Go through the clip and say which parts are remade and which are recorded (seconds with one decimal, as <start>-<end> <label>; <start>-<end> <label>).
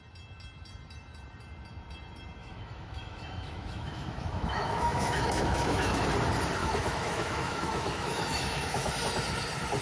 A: 0.0-2.4 recorded; 2.4-6.0 remade; 6.0-6.6 recorded; 6.6-8.9 remade; 8.9-9.8 recorded